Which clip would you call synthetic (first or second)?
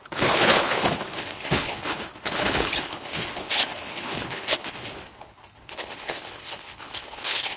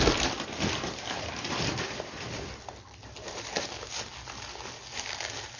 first